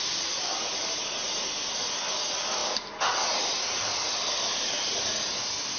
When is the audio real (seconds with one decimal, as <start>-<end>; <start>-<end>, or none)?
0.0-5.8